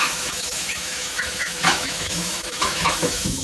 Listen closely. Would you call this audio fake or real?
fake